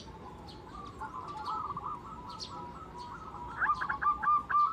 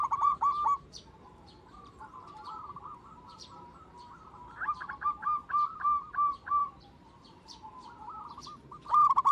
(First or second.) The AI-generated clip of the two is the second